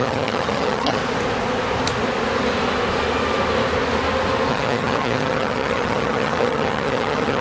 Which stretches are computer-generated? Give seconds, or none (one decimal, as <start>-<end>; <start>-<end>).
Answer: 0.0-1.0; 4.5-7.4